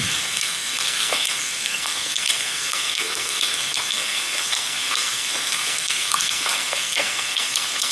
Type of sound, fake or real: fake